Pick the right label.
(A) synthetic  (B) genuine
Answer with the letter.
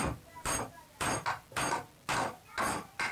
B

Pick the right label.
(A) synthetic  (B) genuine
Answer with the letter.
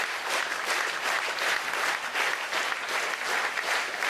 B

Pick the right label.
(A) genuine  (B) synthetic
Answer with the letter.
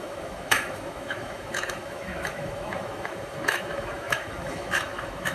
B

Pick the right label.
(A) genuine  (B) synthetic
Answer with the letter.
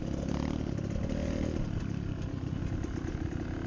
A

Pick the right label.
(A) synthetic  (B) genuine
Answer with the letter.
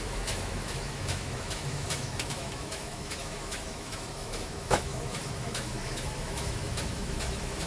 A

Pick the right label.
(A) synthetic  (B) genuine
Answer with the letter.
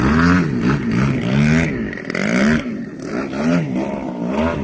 B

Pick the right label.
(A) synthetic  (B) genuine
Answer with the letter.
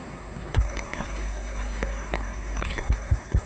A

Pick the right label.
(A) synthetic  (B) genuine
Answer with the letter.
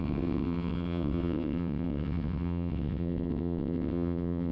A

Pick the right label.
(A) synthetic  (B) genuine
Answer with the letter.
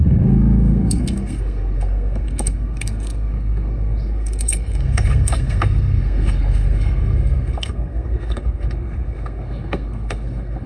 A